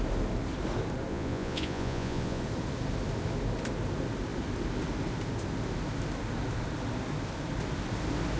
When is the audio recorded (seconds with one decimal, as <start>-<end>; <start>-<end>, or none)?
0.0-1.1; 2.4-8.4